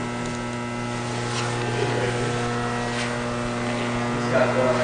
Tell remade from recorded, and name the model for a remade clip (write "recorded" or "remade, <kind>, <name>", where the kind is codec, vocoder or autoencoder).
recorded